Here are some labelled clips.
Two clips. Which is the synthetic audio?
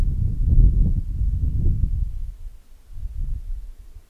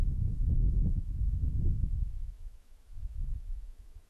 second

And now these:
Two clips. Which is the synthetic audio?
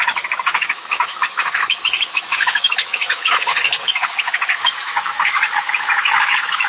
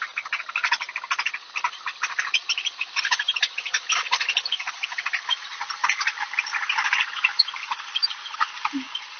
first